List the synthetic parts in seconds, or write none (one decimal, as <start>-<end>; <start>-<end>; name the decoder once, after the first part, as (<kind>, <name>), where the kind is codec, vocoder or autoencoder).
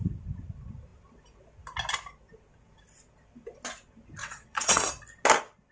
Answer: 4.2-4.9 (vocoder, WaveNeXt)